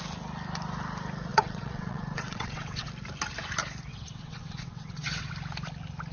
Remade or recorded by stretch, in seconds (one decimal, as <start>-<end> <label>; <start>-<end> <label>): 0.0-1.3 recorded; 1.3-2.9 remade; 2.9-3.9 recorded; 3.9-5.3 remade; 5.3-6.1 recorded